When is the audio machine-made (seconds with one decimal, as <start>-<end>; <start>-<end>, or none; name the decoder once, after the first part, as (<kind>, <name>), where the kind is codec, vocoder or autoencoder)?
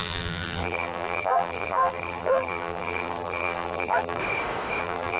0.0-4.2 (vocoder, BigVGAN v2); 4.8-5.2